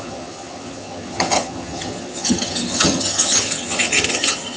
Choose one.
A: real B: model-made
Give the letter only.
B